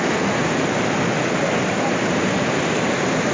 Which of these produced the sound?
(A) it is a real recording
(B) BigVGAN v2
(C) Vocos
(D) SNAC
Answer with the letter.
A